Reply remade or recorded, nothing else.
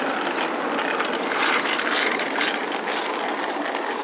recorded